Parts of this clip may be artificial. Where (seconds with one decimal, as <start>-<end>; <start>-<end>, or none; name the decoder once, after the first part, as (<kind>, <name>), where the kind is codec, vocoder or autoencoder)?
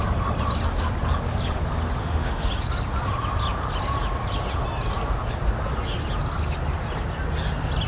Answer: 2.0-2.5 (autoencoder, DAC-VAE)